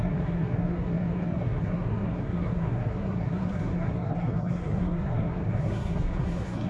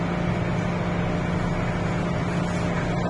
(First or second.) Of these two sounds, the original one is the second